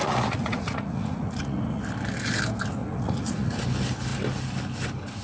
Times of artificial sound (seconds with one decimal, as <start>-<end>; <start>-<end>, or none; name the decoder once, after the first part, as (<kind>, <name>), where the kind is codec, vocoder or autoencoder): 0.0-1.8 (vocoder, Vocos); 2.8-3.6